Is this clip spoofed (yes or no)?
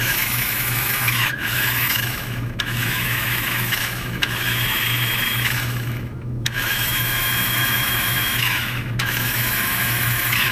yes